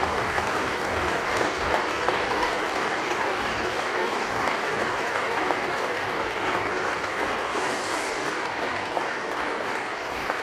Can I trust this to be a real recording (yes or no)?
no